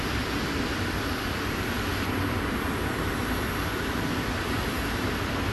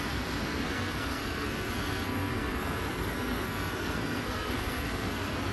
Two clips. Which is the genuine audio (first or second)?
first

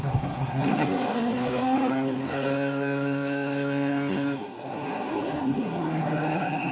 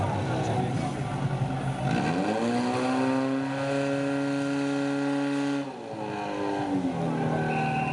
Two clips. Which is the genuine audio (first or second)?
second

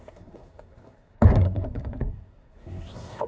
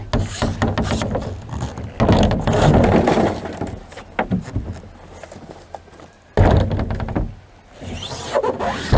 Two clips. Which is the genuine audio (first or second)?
second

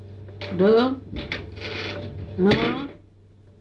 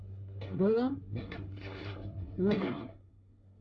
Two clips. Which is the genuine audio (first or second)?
first